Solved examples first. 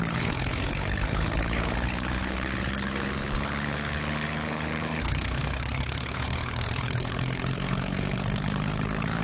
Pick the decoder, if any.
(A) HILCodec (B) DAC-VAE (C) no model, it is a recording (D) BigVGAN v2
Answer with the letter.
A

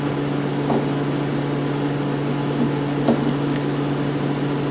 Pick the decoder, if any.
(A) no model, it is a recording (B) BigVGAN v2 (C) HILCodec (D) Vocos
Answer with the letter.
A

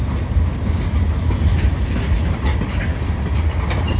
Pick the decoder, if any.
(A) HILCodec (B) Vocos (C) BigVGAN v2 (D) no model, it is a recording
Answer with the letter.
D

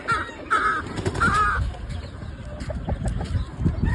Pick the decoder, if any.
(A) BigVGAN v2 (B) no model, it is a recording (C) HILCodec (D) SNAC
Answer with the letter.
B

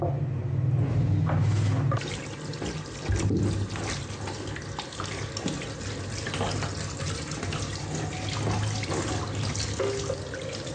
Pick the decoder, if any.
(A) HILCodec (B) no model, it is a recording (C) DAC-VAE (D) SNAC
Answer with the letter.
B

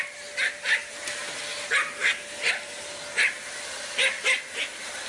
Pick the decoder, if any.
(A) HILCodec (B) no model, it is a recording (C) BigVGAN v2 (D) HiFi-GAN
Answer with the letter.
B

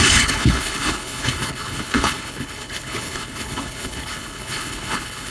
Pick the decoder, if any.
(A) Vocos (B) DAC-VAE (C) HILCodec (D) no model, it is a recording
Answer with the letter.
C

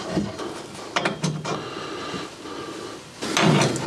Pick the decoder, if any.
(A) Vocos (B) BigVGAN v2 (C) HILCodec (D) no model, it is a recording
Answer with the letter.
D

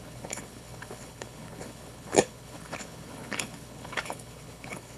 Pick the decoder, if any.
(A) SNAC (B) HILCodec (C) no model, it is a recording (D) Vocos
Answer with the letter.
B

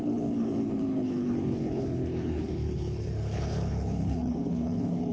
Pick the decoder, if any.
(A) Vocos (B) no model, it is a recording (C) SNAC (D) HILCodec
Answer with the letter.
D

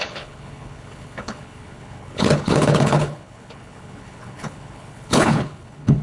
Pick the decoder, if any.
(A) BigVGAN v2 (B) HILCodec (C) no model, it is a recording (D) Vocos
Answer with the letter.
B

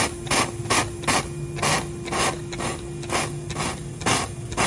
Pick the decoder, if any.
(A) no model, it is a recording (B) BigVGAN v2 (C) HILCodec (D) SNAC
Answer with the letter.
A